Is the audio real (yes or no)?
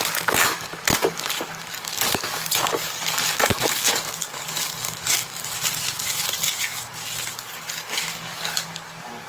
no